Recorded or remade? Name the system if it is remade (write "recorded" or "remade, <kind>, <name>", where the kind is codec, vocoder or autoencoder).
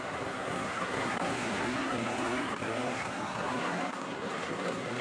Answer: remade, codec, SNAC